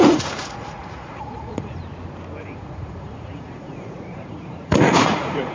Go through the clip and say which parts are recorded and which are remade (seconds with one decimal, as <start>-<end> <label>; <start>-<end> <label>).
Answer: 0.0-1.8 remade; 1.8-2.4 recorded; 2.4-5.5 remade